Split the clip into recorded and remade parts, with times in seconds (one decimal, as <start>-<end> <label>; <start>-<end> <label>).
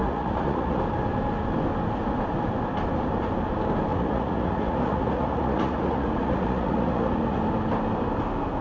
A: 0.0-0.8 remade; 0.8-3.9 recorded; 3.9-7.4 remade; 7.4-8.6 recorded